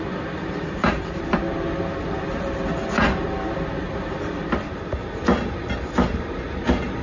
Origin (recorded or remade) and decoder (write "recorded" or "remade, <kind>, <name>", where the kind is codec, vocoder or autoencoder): recorded